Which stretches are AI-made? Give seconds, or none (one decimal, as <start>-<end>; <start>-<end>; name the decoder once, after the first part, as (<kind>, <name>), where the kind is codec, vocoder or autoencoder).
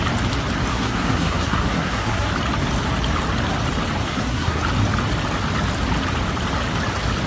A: 0.7-2.3 (codec, SNAC); 4.0-4.6